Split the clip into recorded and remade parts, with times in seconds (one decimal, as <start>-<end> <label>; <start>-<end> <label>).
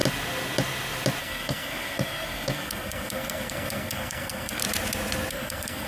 0.0-1.2 recorded; 1.2-4.6 remade; 4.6-5.3 recorded; 5.3-5.9 remade